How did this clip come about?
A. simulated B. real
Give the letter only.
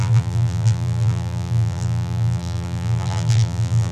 A